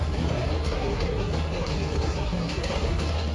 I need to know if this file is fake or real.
fake